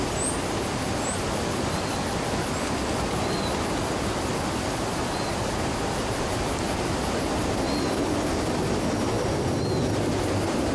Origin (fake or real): real